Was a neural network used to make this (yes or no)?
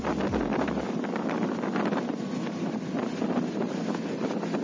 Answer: no